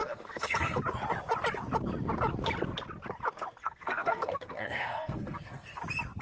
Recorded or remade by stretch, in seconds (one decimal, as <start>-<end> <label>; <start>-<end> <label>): 0.0-0.8 remade; 0.8-3.6 recorded; 3.6-5.8 remade; 5.8-6.2 recorded